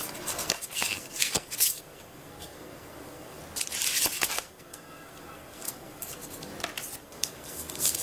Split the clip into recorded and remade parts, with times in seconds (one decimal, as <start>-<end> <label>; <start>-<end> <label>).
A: 0.0-3.4 remade; 3.4-4.1 recorded; 4.1-6.5 remade; 6.5-7.0 recorded; 7.0-8.0 remade